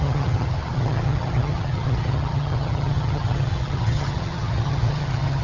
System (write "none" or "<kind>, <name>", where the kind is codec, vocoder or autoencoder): vocoder, HiFi-GAN